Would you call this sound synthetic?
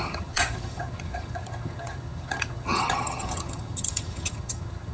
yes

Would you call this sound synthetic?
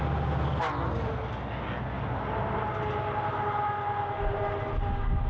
no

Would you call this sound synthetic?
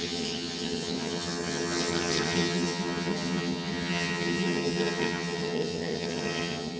yes